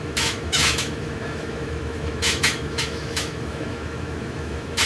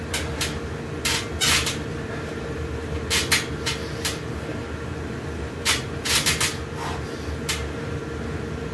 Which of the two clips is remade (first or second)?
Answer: first